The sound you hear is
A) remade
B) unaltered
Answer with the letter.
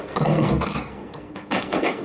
A